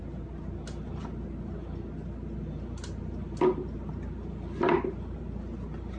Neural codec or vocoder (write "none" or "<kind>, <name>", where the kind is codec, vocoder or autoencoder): none